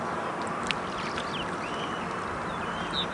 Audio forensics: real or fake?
real